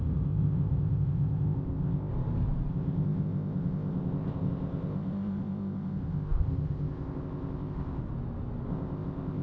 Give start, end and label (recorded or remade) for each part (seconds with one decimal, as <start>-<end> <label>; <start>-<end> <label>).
0.0-2.1 remade; 2.1-2.7 recorded; 2.7-8.0 remade; 8.0-8.7 recorded; 8.7-9.4 remade

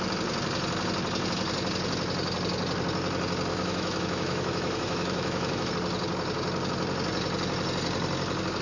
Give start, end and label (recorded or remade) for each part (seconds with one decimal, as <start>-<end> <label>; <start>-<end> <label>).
0.0-3.5 recorded; 3.5-5.7 remade; 5.7-8.6 recorded

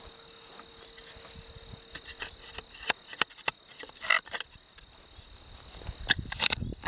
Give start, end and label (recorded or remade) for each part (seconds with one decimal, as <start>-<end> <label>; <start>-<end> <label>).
0.0-6.9 recorded